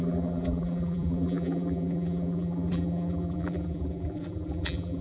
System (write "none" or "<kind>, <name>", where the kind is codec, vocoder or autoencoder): vocoder, BigVGAN v2